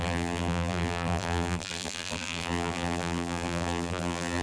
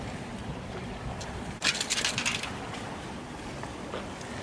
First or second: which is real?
second